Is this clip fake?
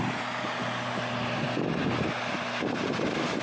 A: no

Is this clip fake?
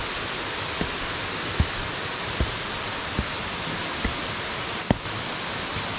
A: no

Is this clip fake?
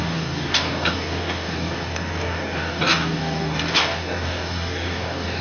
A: yes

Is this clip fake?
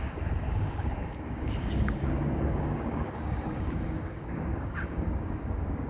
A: yes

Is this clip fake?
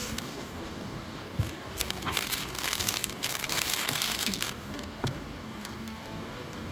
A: yes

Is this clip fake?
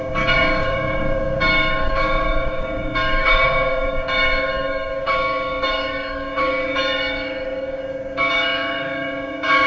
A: yes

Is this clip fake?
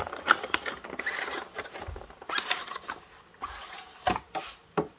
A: no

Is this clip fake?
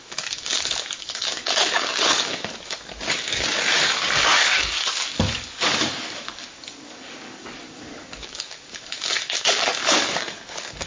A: yes